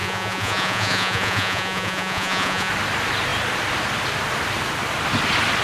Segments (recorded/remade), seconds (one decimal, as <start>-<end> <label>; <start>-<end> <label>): 0.0-2.7 remade; 2.7-5.6 recorded